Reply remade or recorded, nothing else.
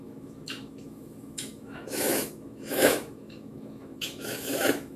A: remade